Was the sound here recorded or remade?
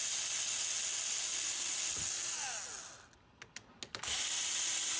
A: recorded